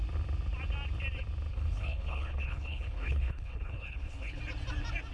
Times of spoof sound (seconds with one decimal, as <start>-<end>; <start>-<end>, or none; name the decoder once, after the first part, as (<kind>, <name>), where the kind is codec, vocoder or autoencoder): 1.5-4.4 (codec, HILCodec)

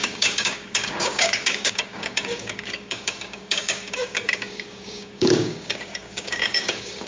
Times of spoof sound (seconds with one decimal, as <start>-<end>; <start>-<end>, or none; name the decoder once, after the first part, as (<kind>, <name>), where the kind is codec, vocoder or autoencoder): 0.0-7.1 (codec, DAC)

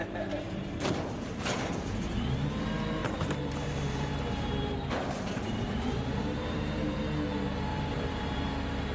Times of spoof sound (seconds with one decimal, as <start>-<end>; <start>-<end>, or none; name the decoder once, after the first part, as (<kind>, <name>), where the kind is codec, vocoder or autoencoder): 0.0-1.9 (vocoder, BigVGAN v2); 3.0-7.0; 7.7-8.5

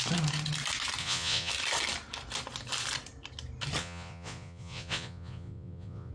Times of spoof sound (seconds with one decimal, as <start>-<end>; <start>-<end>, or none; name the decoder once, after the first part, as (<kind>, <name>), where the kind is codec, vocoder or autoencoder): 1.0-1.5 (vocoder, Vocos); 3.8-6.1

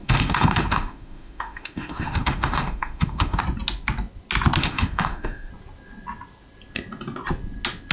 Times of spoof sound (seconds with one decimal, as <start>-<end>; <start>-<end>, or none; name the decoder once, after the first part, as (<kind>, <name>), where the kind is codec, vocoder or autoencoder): 0.0-3.4 (autoencoder, DAC-VAE); 4.6-5.5

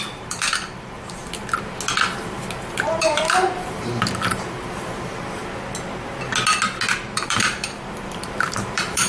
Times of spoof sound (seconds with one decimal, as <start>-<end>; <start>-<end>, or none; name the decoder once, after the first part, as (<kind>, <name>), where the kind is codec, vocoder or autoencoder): 0.0-1.2 (vocoder, BigVGAN v2); 2.7-5.4; 6.9-9.1